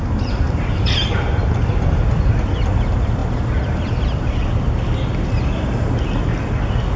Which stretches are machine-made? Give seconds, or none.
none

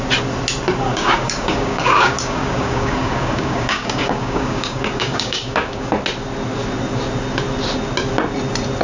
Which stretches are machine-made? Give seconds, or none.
0.9-5.9 (codec, DAC)

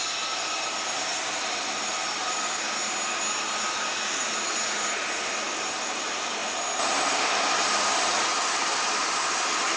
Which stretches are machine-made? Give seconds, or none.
none

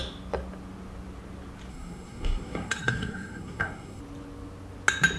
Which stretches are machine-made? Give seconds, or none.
1.7-4.0 (codec, SNAC)

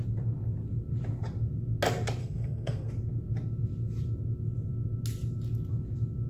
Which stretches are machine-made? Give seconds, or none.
2.2-2.9 (codec, SNAC)